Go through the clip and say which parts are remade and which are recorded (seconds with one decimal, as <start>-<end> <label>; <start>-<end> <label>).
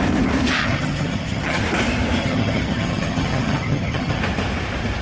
0.0-0.6 recorded; 0.6-1.6 remade; 1.6-2.2 recorded; 2.2-4.2 remade; 4.2-5.0 recorded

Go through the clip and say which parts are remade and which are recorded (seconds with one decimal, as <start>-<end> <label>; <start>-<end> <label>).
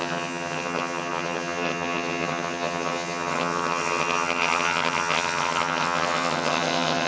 0.0-7.1 remade